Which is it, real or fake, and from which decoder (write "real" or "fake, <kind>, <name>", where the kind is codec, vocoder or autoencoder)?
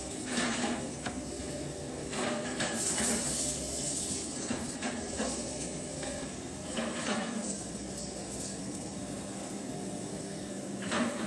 fake, codec, SNAC